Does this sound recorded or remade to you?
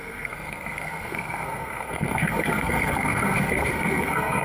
remade